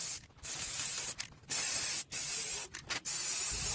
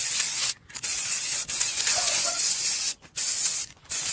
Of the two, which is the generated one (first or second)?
second